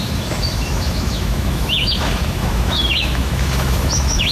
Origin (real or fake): fake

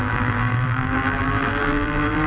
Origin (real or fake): fake